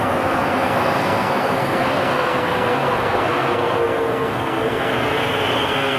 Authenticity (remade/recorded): remade